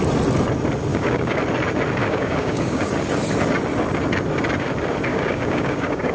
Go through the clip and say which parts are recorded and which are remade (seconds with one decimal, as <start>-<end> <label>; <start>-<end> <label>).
0.0-0.9 recorded; 0.9-1.4 remade; 1.4-2.0 recorded; 2.0-2.9 remade; 2.9-5.1 recorded; 5.1-6.1 remade